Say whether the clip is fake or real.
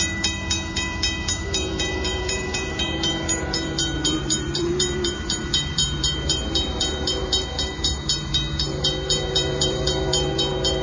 fake